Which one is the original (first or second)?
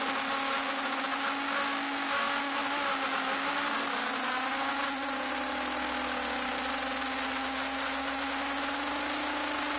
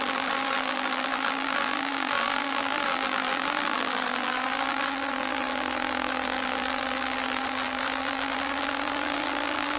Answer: first